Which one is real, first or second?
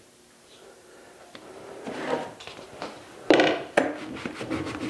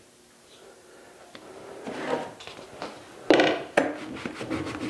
second